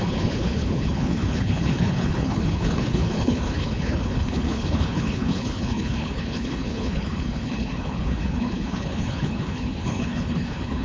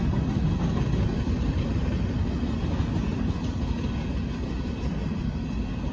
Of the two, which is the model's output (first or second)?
first